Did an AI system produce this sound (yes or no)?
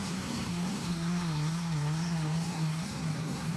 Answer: yes